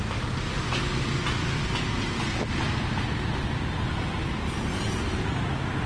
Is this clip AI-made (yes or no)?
no